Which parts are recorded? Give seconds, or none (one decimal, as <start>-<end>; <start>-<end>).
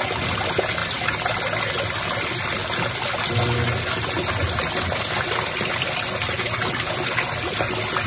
0.0-8.1